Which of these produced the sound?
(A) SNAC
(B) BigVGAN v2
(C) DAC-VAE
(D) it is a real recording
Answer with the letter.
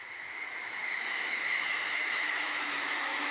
C